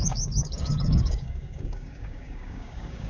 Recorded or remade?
remade